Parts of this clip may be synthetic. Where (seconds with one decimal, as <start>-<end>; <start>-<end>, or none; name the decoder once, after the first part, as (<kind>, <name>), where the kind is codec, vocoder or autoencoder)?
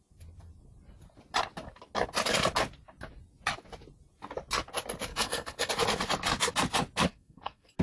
5.1-5.7 (codec, SNAC); 7.1-7.8